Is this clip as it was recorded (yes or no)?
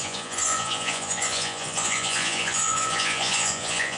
no